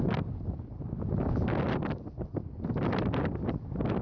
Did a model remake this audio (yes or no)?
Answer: no